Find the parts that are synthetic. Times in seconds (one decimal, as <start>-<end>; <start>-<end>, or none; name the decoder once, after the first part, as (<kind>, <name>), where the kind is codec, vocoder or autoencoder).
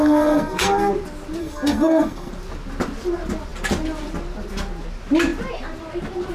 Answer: 0.0-0.9 (codec, SNAC); 1.4-2.3